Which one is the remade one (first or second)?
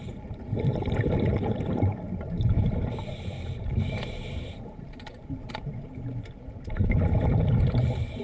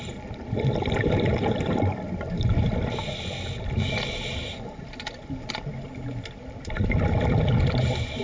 first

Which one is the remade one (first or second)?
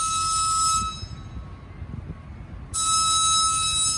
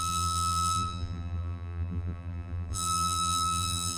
second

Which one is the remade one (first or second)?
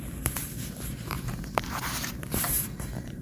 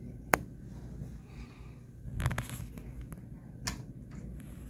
first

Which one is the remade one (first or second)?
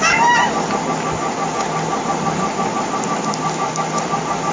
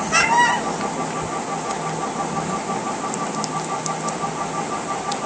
first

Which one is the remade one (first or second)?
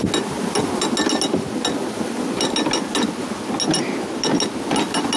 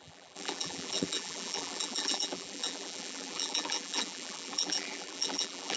second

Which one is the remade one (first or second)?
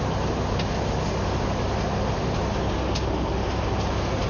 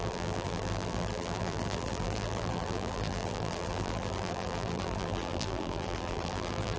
second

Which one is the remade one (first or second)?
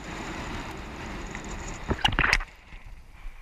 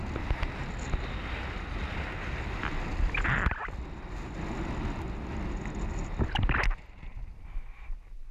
first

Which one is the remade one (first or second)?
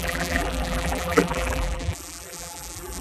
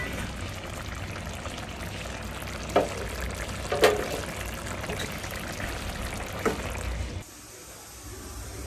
first